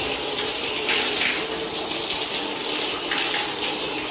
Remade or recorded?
recorded